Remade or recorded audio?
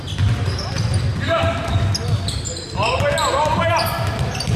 recorded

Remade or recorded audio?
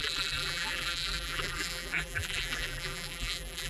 remade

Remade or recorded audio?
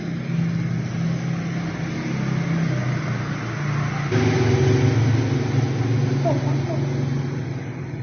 recorded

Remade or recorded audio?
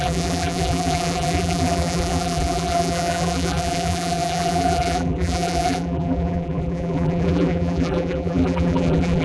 remade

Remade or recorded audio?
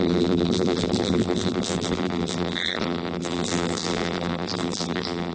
remade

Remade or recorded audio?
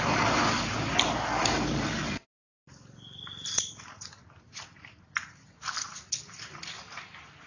recorded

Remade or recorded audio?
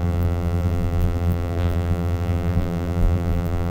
remade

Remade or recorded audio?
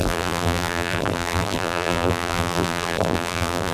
remade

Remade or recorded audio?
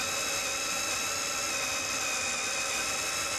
recorded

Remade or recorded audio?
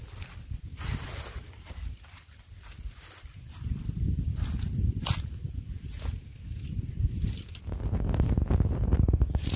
recorded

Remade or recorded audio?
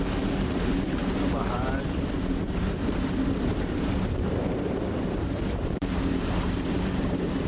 remade